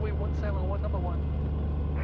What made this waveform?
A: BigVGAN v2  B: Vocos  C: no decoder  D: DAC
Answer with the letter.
A